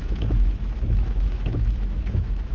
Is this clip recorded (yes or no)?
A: no